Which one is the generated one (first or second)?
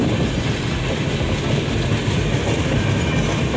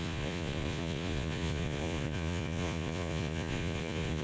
second